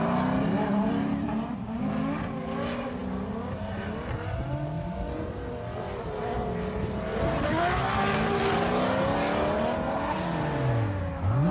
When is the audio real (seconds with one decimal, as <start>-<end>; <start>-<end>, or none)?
0.0-0.6; 1.8-11.5